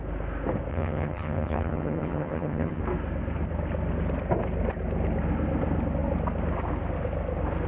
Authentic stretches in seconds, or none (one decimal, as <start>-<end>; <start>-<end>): 0.0-0.7; 2.8-7.7